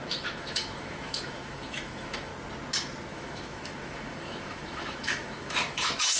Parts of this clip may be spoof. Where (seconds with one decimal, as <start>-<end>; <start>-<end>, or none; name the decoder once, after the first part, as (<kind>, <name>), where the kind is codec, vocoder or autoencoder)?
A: 0.0-2.3 (autoencoder, DAC-VAE); 3.1-6.2